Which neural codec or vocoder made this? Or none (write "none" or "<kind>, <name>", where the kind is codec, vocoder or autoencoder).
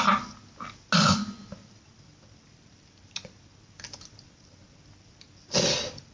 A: none